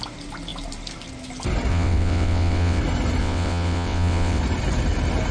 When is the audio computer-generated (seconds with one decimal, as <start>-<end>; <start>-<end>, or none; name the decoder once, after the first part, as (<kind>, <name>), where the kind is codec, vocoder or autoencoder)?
1.7-2.8 (vocoder, WaveNeXt); 3.2-4.4